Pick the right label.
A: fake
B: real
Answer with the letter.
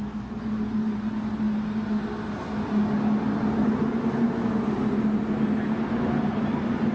B